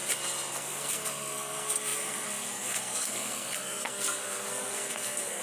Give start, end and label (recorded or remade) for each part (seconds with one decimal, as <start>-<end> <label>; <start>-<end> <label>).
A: 0.0-0.5 recorded; 0.5-5.4 remade